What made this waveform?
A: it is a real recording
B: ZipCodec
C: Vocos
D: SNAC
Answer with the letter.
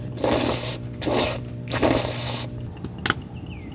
A